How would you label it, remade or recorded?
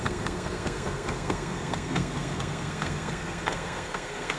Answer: remade